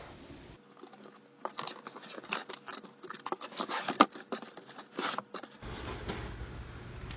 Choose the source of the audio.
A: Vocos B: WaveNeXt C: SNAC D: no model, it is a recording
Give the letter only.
D